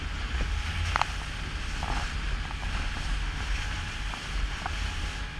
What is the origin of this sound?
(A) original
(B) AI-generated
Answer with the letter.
A